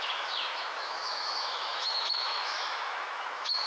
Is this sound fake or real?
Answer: fake